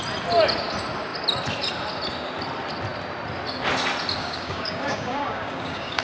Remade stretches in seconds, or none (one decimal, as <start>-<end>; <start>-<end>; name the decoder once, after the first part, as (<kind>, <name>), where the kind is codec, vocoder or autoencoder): 4.2-6.0 (codec, DAC)